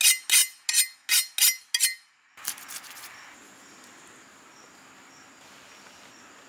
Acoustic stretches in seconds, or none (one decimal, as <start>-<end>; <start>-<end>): 0.0-6.5